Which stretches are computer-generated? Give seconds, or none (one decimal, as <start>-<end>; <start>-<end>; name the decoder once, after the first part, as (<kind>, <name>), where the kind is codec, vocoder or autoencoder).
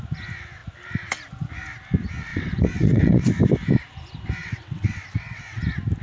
2.3-3.3 (vocoder, WaveNeXt); 4.4-5.6